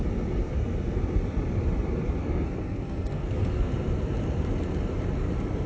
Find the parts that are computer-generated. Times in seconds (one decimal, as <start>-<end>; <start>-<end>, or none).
0.4-1.0; 2.2-3.7